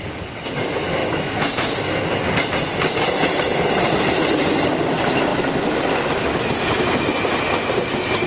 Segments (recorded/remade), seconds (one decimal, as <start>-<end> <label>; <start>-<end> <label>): 0.0-1.0 recorded; 1.0-2.2 remade; 2.2-8.3 recorded